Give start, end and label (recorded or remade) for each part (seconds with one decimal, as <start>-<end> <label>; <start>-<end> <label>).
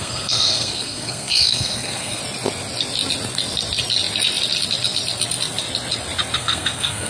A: 0.0-2.2 remade; 2.2-6.4 recorded; 6.4-7.1 remade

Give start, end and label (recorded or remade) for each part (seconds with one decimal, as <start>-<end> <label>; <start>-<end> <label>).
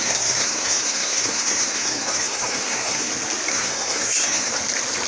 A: 0.0-3.1 remade; 3.1-3.5 recorded; 3.5-4.5 remade; 4.5-5.1 recorded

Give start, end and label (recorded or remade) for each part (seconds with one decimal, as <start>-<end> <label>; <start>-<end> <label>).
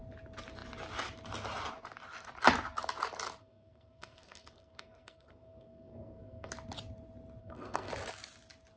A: 0.0-3.4 recorded; 3.4-6.5 remade; 6.5-7.4 recorded; 7.4-7.9 remade; 7.9-8.8 recorded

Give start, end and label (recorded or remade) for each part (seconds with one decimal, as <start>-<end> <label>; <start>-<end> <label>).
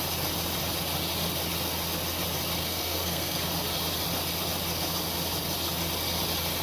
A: 0.0-2.6 recorded; 2.6-3.5 remade; 3.5-6.6 recorded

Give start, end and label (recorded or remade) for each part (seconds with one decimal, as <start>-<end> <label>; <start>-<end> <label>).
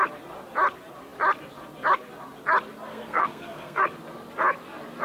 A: 0.0-2.9 recorded; 2.9-3.8 remade; 3.8-5.0 recorded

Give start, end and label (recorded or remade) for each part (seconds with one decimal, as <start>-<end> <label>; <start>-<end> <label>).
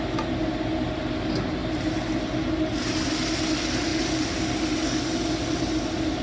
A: 0.0-6.2 recorded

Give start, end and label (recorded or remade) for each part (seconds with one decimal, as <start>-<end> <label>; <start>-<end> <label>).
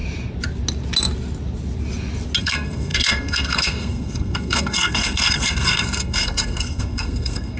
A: 0.0-2.4 recorded; 2.4-7.6 remade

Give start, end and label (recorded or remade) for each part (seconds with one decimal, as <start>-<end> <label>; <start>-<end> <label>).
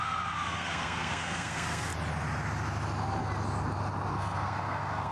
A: 0.0-1.9 remade; 1.9-4.1 recorded; 4.1-5.1 remade